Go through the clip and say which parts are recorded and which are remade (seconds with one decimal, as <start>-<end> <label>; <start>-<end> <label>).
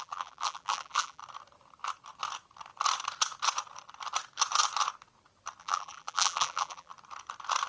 0.0-1.2 remade; 1.2-5.6 recorded; 5.6-6.9 remade; 6.9-7.7 recorded